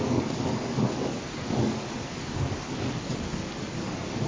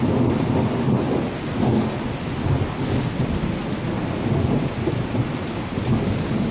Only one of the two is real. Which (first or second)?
second